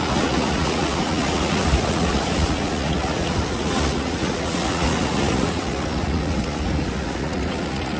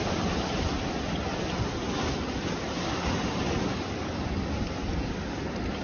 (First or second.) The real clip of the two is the second